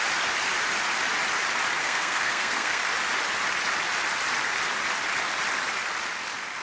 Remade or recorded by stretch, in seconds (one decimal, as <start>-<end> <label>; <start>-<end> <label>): 0.0-1.8 recorded; 1.8-2.8 remade; 2.8-6.6 recorded